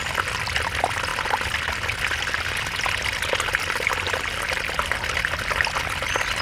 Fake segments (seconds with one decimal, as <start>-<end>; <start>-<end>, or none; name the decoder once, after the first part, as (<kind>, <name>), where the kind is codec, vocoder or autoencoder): none